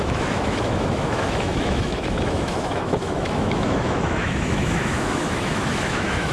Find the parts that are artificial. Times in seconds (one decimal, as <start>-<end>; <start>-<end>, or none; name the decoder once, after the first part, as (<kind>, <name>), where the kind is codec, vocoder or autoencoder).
0.0-6.3 (autoencoder, DAC-VAE)